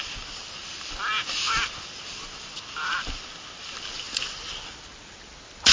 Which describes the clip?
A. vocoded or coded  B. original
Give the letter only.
B